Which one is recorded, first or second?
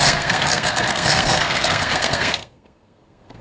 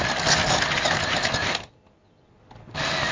second